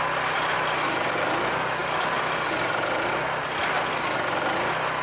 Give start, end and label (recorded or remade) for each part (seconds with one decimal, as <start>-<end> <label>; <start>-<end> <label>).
0.0-5.0 recorded